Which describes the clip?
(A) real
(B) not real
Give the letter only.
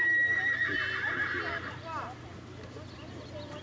A